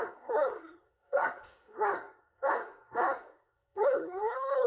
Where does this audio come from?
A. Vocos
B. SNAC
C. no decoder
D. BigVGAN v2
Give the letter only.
B